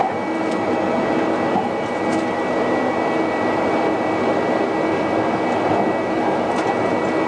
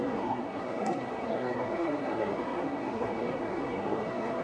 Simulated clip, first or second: second